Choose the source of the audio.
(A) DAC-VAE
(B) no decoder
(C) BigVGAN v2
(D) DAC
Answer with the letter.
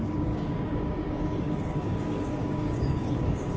D